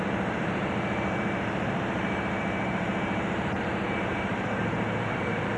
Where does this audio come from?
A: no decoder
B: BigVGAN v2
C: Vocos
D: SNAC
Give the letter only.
B